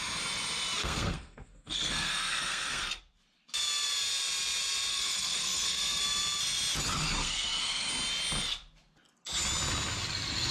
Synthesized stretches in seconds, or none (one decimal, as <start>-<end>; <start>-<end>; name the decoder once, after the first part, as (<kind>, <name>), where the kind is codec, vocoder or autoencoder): 0.8-3.0 (codec, SNAC); 4.9-6.0; 7.2-7.9